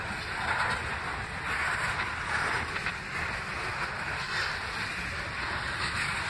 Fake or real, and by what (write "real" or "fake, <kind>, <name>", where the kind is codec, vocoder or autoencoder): real